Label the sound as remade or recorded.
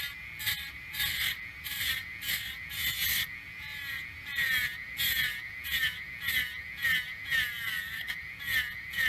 recorded